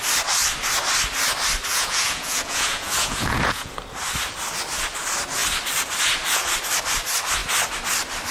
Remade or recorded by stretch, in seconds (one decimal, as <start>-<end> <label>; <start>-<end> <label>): 0.0-1.7 recorded; 1.7-3.7 remade; 3.7-8.3 recorded